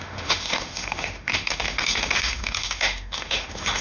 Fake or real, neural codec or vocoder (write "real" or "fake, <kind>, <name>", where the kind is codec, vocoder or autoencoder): fake, autoencoder, DAC-VAE